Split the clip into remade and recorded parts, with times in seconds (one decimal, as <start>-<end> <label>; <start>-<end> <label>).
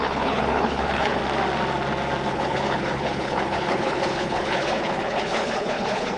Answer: 0.0-1.2 remade; 1.2-2.3 recorded; 2.3-6.2 remade